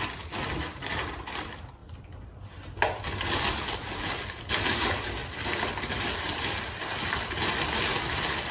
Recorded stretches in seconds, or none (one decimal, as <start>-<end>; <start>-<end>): 0.0-8.5